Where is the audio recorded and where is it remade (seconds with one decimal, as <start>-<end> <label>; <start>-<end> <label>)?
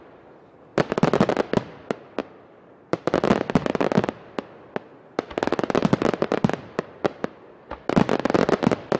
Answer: 0.0-2.2 recorded; 2.2-4.1 remade; 4.1-5.8 recorded; 5.8-7.3 remade; 7.3-9.0 recorded